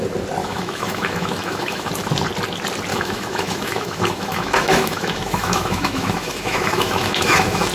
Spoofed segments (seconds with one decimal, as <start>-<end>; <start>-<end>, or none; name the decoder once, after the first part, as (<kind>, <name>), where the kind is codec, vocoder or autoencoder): 0.4-1.9 (autoencoder, DAC-VAE); 2.9-7.7